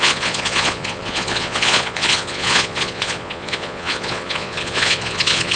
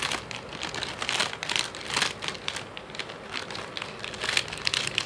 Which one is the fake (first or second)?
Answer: first